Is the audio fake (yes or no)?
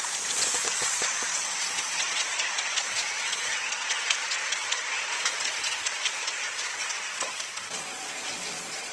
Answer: yes